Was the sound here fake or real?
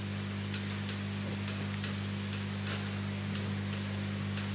real